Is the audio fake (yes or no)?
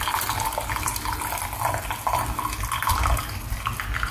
no